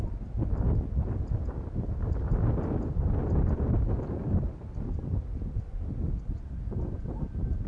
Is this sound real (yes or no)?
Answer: yes